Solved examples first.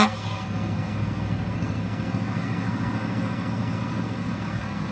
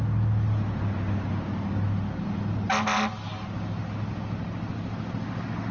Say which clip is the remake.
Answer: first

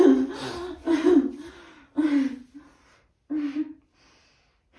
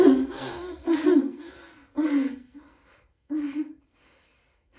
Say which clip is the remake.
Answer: second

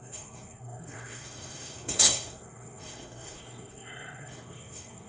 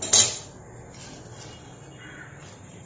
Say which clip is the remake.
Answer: first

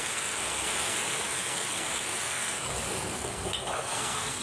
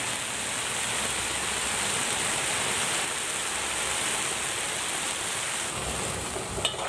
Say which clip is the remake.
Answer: first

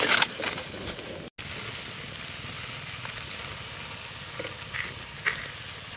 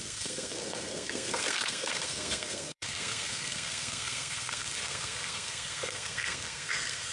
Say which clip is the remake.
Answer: second